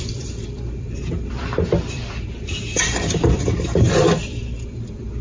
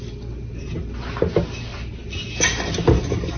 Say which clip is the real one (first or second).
second